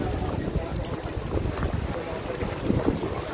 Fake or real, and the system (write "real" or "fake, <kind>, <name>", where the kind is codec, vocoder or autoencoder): real